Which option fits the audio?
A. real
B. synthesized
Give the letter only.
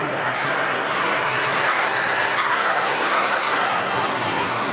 B